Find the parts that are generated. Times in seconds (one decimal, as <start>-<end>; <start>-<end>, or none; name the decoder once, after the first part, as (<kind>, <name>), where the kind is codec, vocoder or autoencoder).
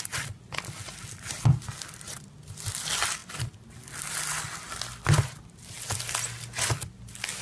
none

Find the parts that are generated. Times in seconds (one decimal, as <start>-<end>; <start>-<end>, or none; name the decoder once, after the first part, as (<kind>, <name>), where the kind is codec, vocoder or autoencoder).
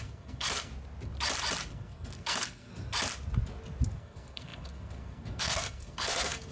0.0-0.7 (codec, SNAC); 1.7-2.7; 4.0-6.5